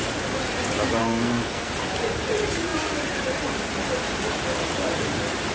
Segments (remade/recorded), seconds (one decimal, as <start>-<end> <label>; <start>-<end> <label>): 0.0-1.0 recorded; 1.0-1.7 remade; 1.7-5.5 recorded